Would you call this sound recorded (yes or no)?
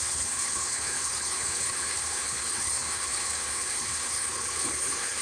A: no